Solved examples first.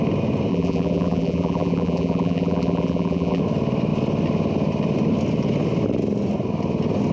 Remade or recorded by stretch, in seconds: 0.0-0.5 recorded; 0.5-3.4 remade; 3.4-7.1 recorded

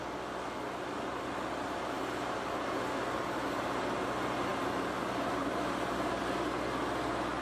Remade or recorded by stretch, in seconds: 0.0-7.4 recorded

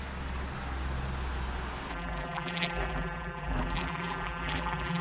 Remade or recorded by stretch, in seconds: 0.0-1.9 recorded; 1.9-5.0 remade

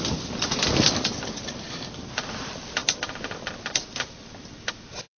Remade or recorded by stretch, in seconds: 0.0-5.2 remade

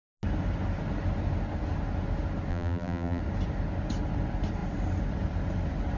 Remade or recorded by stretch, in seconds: 0.0-2.5 recorded; 2.5-3.2 remade; 3.2-6.0 recorded